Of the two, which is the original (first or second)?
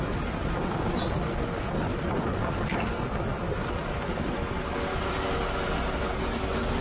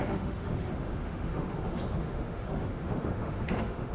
first